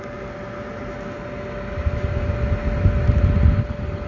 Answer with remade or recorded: recorded